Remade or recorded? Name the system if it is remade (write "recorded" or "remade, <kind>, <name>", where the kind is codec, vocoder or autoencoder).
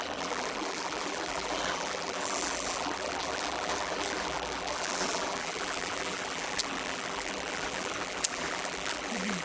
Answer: remade, vocoder, BigVGAN v2